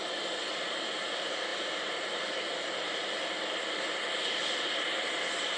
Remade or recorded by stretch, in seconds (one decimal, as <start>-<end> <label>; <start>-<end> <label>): 0.0-5.6 recorded